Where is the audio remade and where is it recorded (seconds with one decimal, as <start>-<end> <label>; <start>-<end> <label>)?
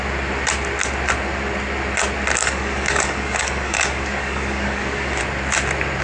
0.0-2.4 recorded; 2.4-5.2 remade; 5.2-6.0 recorded